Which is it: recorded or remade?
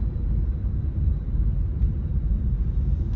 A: recorded